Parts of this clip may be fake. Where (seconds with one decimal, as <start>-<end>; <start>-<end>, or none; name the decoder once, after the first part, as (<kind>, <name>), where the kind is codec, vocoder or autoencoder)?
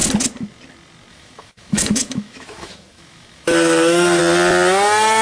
1.1-4.2 (autoencoder, DAC-VAE)